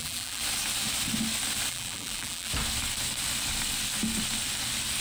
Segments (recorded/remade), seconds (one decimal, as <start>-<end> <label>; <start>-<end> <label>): 0.0-0.4 remade; 0.4-1.7 recorded; 1.7-2.5 remade; 2.5-5.0 recorded